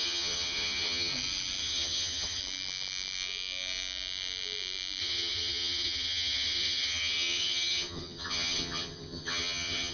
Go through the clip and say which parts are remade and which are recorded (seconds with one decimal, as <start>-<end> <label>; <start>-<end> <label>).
0.0-1.1 remade; 1.1-1.6 recorded; 1.6-2.4 remade; 2.4-5.0 recorded; 5.0-9.9 remade